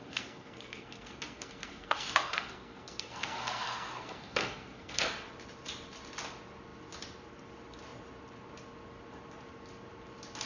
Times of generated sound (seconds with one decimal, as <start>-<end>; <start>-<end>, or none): 0.0-5.1